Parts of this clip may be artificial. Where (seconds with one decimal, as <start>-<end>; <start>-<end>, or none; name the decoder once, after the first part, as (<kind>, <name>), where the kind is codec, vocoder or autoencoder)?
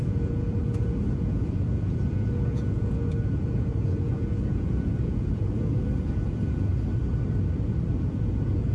0.0-6.7 (vocoder, Vocos); 7.9-8.7